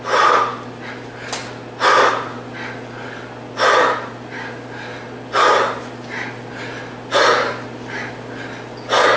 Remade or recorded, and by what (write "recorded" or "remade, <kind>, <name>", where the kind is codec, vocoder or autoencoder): recorded